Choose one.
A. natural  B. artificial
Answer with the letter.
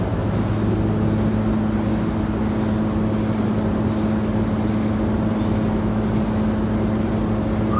A